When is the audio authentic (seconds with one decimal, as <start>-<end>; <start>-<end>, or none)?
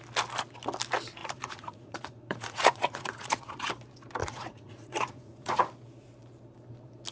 0.0-1.2; 3.7-4.2; 5.6-7.1